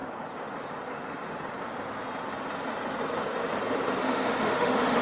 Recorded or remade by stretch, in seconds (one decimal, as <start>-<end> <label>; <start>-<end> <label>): 0.0-4.0 recorded; 4.0-5.0 remade